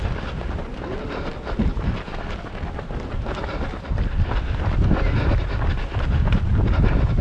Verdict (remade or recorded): recorded